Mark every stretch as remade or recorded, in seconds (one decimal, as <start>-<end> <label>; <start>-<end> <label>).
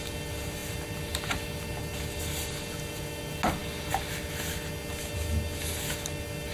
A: 0.0-6.5 recorded